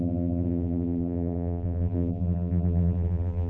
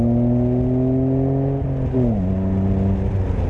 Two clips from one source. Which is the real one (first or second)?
second